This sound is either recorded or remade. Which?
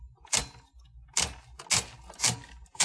recorded